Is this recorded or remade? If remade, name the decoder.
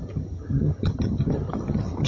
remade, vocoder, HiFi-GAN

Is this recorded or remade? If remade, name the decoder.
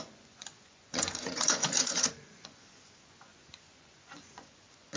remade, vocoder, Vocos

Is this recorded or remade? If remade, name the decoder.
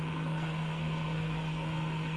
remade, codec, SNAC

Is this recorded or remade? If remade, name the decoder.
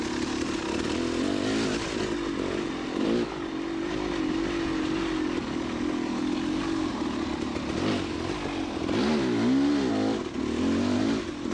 recorded